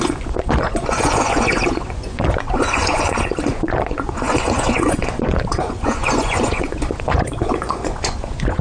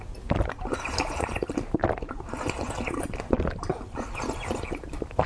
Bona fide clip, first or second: second